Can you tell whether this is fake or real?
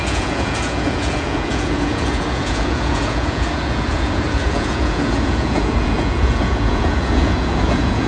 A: fake